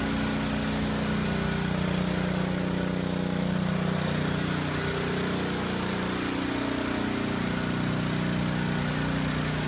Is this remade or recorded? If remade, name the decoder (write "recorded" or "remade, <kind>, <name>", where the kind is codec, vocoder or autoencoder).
recorded